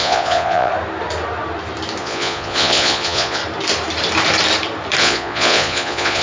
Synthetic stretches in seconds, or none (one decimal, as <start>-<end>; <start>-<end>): 0.0-0.7; 2.0-3.4; 5.0-6.2